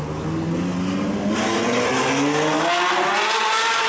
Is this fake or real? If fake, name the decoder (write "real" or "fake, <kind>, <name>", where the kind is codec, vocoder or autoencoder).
real